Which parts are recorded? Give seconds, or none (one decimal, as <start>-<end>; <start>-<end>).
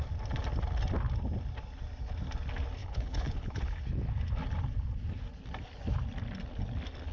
0.0-2.8; 4.1-7.1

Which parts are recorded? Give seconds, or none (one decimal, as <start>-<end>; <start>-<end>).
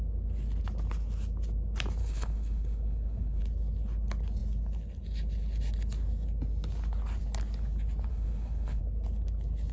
0.0-2.0; 3.4-8.1; 8.8-9.7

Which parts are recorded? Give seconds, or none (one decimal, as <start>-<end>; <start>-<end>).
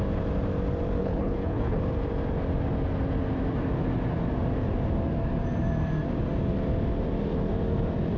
0.0-1.0; 1.8-8.2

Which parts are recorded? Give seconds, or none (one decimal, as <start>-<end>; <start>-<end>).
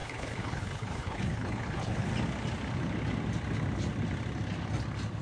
2.1-5.2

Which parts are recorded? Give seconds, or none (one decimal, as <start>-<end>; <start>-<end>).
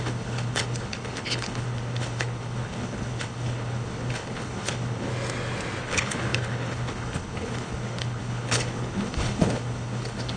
5.1-5.8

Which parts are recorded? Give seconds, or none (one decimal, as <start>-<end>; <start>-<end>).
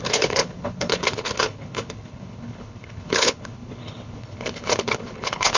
none